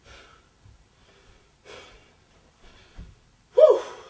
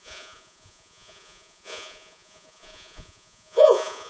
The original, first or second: first